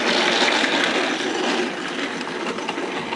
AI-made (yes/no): no